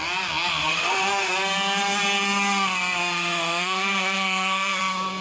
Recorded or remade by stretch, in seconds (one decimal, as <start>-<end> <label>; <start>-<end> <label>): 0.0-0.6 recorded; 0.6-1.3 remade; 1.3-3.0 recorded; 3.0-4.8 remade; 4.8-5.2 recorded